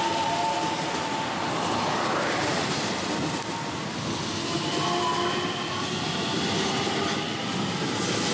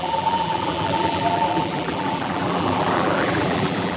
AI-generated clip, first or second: second